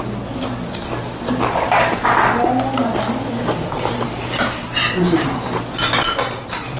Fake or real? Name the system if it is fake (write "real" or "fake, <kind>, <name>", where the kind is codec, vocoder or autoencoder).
real